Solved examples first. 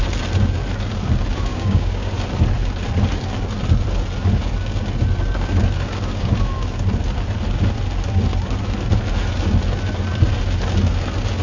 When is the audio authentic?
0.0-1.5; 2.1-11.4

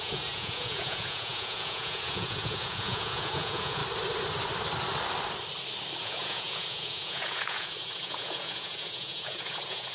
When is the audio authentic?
3.8-6.0

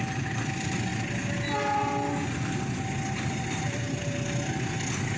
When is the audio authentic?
0.9-3.6; 4.0-5.2

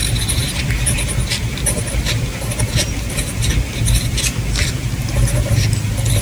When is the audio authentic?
0.0-6.2

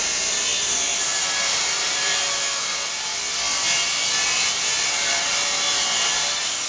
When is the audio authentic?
0.0-6.7

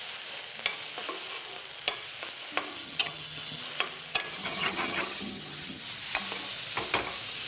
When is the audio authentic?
0.0-2.7; 3.6-4.4; 5.8-7.5